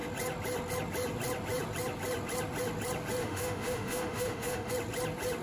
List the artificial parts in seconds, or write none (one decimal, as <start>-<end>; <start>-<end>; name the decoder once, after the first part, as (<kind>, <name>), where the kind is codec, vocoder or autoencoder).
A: 3.2-4.7 (autoencoder, DAC-VAE)